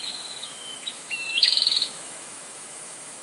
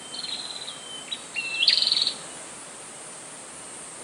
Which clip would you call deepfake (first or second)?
first